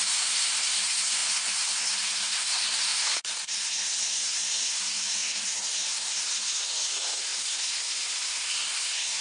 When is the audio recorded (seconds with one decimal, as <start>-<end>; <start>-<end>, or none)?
none